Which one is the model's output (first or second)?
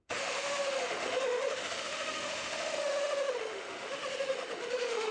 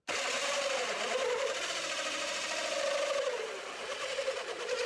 first